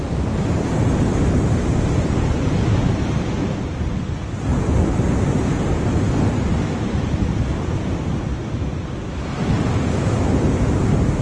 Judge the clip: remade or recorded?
recorded